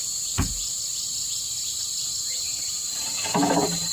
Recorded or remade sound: remade